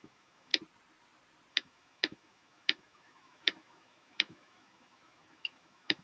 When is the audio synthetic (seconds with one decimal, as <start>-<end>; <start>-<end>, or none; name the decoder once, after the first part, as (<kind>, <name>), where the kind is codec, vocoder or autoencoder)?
0.0-0.5 (autoencoder, DAC-VAE); 1.5-6.0